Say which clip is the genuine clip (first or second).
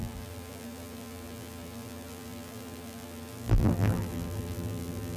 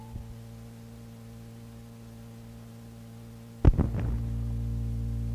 second